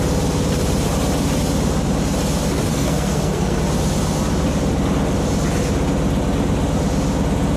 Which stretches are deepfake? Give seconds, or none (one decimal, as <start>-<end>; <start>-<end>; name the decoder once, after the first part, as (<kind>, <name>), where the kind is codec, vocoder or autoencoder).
2.7-3.6 (codec, SNAC)